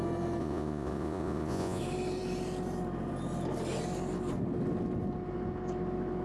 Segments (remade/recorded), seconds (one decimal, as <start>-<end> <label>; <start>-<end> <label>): 0.0-0.4 recorded; 0.4-1.8 remade; 1.8-6.2 recorded